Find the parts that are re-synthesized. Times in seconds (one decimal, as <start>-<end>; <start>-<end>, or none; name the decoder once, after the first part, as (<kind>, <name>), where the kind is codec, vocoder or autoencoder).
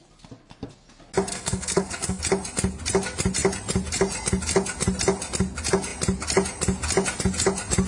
1.3-2.2 (codec, SNAC)